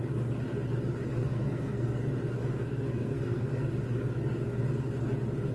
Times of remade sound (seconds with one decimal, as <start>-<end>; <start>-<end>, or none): 1.2-2.0; 2.7-3.7